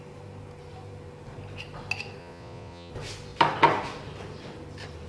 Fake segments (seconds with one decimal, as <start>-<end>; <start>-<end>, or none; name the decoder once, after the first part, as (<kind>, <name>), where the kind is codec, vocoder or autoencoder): 2.2-2.9 (vocoder, Vocos)